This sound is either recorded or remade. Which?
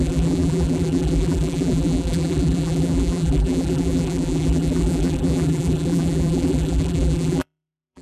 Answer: remade